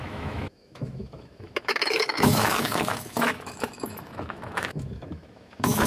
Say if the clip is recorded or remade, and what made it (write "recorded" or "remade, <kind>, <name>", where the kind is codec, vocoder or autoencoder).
remade, autoencoder, DAC-VAE